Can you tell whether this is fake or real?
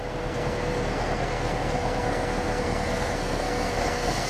fake